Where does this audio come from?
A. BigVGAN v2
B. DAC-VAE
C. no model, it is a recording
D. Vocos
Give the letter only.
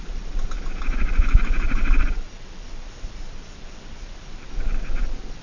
A